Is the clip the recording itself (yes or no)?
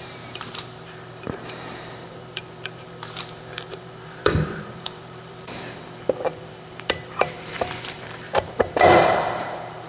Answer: no